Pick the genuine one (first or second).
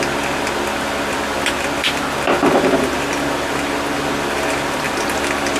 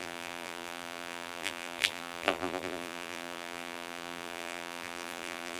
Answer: first